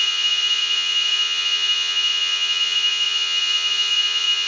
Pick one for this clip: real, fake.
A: fake